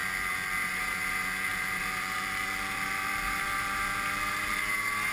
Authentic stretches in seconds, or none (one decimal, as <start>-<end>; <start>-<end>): 0.0-1.5; 4.6-5.1